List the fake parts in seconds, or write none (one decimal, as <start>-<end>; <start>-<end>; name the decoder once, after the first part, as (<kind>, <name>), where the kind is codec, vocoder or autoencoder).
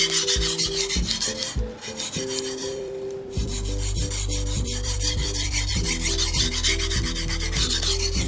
2.6-5.7 (vocoder, BigVGAN v2)